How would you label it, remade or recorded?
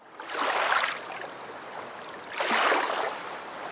recorded